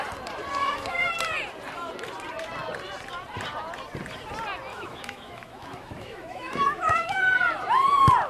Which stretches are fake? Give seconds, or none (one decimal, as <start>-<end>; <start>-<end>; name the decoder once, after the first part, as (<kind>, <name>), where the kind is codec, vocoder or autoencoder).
0.6-1.1 (autoencoder, DAC-VAE); 4.7-7.2